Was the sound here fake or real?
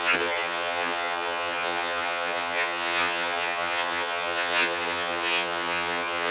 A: fake